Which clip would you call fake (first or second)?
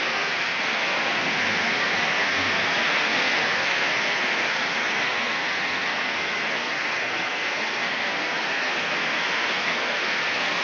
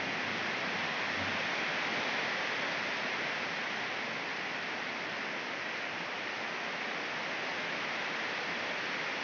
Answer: first